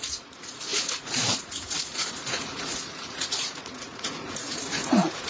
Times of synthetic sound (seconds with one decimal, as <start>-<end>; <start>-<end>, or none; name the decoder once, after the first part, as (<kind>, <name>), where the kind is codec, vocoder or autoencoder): 0.0-5.3 (vocoder, Vocos)